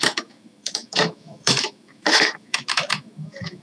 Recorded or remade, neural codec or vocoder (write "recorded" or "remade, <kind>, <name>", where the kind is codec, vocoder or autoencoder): remade, autoencoder, DAC-VAE